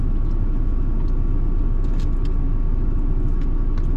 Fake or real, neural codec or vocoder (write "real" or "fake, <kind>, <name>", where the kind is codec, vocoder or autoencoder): real